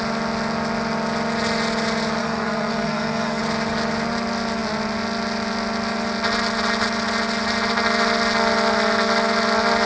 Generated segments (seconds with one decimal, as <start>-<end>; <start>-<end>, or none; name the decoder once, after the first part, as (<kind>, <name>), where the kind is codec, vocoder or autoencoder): 2.2-3.4 (codec, SNAC)